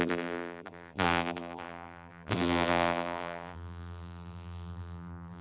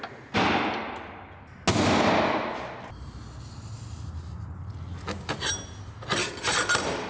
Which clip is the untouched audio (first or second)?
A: second